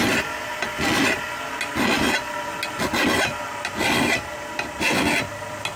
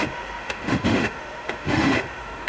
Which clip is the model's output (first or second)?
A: second